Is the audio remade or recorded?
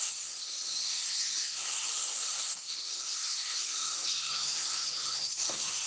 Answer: remade